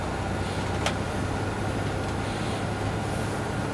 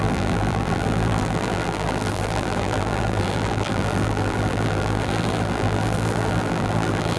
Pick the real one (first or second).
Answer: first